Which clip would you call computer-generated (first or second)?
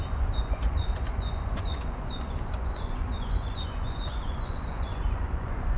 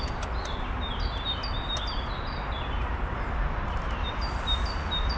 first